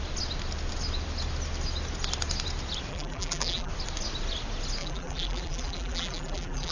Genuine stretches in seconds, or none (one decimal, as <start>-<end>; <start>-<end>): 0.0-2.9; 3.7-4.8